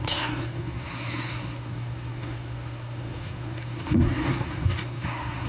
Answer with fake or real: fake